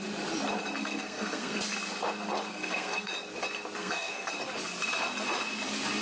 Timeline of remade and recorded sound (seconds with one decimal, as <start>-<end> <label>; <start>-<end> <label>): 0.0-0.8 recorded; 0.8-1.6 remade; 1.6-2.5 recorded; 2.5-3.1 remade; 3.1-3.8 recorded; 3.8-4.3 remade; 4.3-6.0 recorded